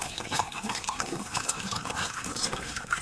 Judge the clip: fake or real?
fake